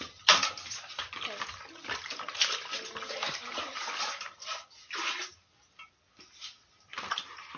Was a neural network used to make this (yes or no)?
no